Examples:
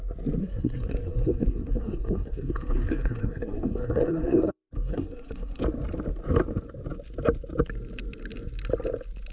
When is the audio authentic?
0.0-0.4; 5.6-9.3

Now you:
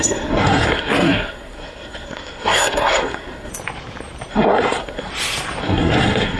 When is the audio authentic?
3.5-4.3; 5.1-5.6